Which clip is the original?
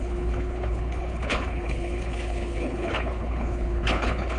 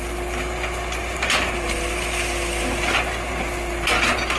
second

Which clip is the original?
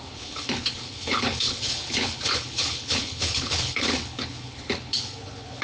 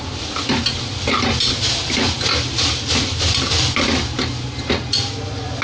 second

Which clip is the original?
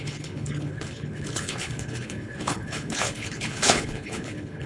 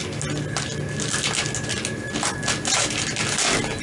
second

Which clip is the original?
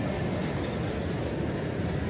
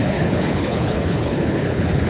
first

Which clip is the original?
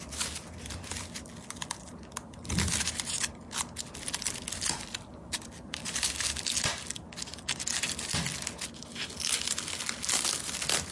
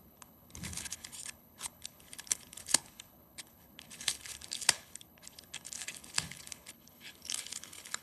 first